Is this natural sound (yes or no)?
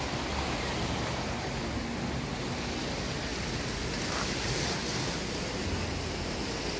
yes